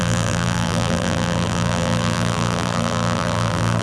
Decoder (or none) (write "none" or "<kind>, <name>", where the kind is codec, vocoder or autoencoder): vocoder, BigVGAN v2